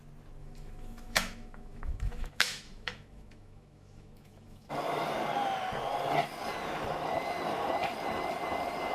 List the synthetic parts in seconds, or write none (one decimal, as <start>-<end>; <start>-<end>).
0.4-4.7